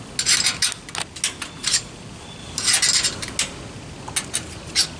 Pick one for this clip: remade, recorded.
recorded